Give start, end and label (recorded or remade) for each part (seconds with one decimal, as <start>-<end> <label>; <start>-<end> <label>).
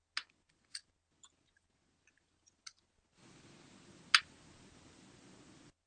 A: 0.0-5.9 recorded